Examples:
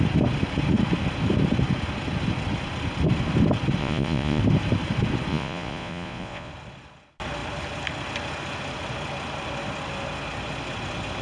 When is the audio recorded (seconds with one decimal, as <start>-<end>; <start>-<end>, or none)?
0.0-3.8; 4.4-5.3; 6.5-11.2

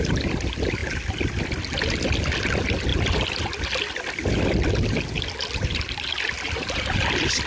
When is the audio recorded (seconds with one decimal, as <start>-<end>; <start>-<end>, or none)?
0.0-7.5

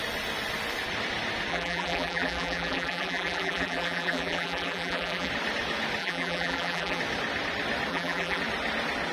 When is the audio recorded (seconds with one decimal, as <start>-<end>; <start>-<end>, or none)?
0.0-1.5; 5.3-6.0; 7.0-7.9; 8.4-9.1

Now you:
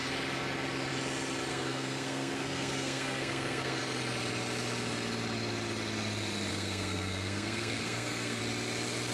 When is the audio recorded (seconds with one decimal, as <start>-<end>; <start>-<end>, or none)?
0.0-1.5; 3.8-6.5; 8.4-9.1